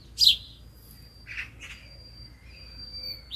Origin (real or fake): real